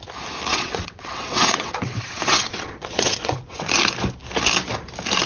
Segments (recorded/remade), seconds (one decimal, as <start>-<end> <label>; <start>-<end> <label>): 0.0-0.5 recorded; 0.5-3.7 remade; 3.7-5.3 recorded